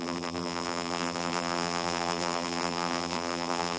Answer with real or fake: fake